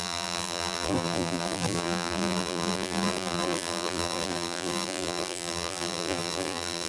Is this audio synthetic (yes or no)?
yes